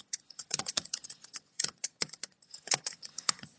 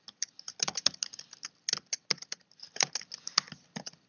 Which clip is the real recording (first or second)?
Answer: second